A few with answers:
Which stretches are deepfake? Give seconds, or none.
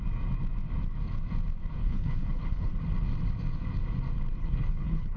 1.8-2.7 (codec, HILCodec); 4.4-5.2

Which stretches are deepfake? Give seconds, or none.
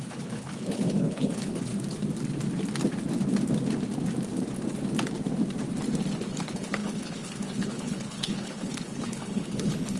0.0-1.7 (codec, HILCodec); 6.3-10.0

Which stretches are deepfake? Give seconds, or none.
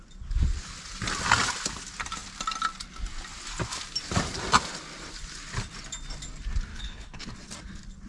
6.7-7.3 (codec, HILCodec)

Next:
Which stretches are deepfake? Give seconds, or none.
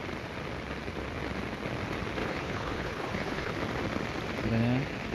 2.2-3.5 (codec, HILCodec)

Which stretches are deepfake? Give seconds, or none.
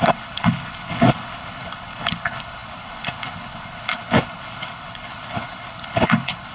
0.0-6.5 (codec, HILCodec)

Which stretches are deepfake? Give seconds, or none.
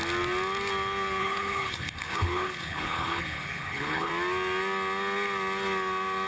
1.2-4.1 (codec, HILCodec)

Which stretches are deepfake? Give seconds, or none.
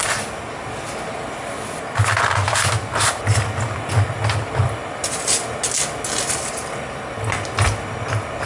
none